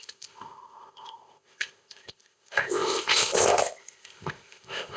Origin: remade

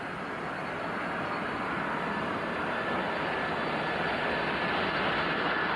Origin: recorded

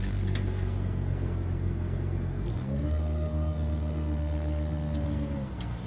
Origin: remade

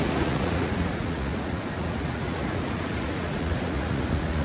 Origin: remade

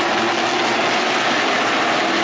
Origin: recorded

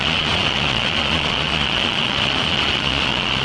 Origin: remade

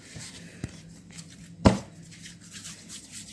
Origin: recorded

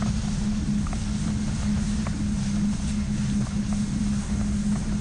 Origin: recorded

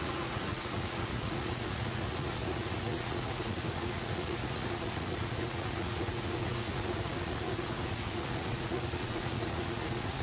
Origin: remade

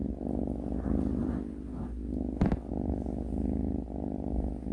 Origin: recorded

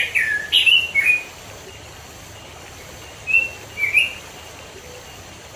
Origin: recorded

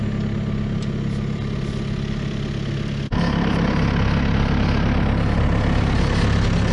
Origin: recorded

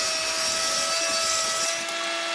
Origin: recorded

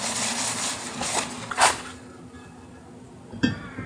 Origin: recorded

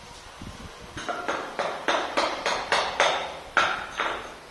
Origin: recorded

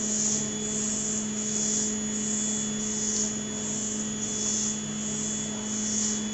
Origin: recorded